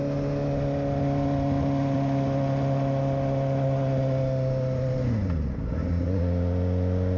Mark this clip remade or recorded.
recorded